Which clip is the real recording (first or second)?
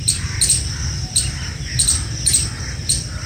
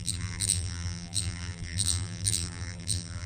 first